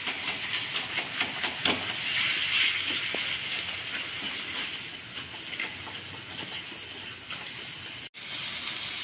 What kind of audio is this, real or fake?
real